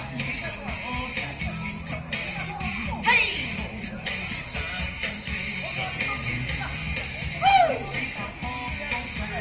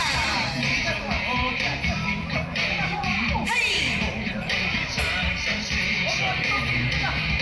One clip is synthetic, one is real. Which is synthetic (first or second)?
second